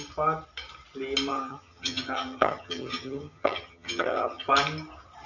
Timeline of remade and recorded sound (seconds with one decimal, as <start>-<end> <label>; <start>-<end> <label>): 0.0-1.3 recorded; 1.3-4.5 remade; 4.5-5.3 recorded